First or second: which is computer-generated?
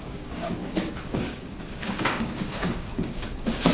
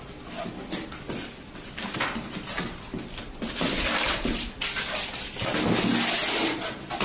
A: first